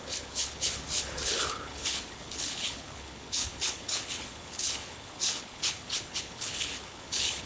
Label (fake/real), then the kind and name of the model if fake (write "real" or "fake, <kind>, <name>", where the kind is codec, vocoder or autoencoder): fake, codec, HILCodec